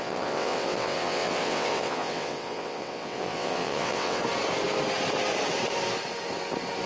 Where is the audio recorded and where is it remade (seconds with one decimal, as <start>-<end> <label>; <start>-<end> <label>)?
0.0-4.2 remade; 4.2-6.9 recorded